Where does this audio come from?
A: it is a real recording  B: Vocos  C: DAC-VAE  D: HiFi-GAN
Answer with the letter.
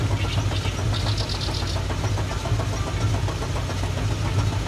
A